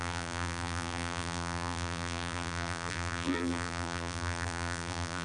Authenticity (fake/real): fake